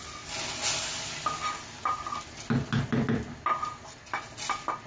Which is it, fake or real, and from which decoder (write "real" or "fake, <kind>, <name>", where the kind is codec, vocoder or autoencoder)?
real